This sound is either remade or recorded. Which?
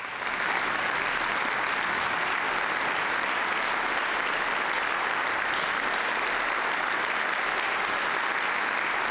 recorded